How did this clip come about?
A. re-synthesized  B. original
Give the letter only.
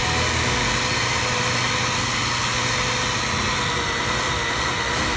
B